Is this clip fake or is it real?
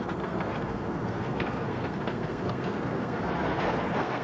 fake